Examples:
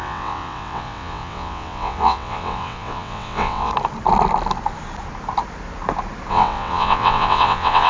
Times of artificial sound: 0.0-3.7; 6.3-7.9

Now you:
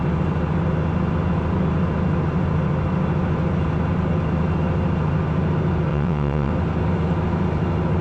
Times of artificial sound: 5.9-6.5